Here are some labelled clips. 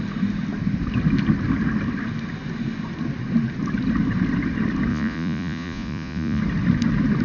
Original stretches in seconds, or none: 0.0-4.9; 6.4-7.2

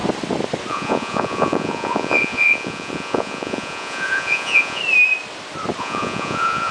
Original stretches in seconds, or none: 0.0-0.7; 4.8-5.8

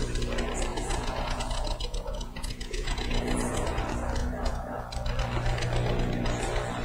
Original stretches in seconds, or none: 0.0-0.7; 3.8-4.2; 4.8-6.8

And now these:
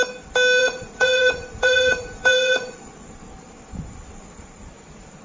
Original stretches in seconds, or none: 0.0-0.6; 2.9-5.2